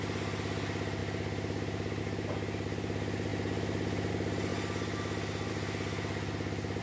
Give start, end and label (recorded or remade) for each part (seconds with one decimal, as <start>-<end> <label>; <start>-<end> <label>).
0.0-6.8 recorded